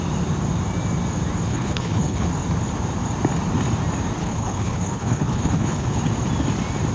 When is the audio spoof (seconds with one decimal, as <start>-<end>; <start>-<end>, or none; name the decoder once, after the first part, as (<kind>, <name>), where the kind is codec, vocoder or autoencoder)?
1.5-2.3 (codec, HILCodec); 4.2-6.0